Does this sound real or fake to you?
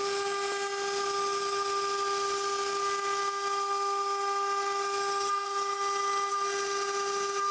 real